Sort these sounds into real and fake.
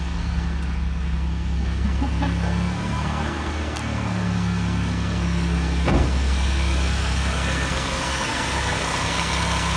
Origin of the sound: fake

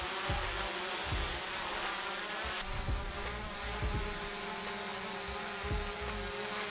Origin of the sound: real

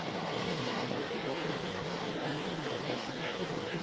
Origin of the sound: fake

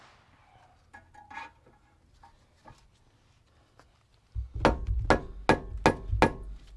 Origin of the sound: real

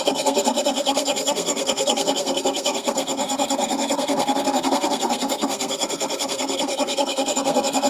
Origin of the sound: fake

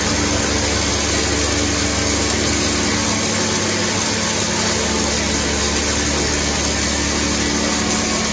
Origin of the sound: real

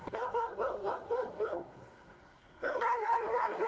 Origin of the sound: fake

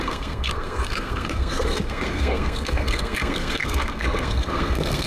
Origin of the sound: fake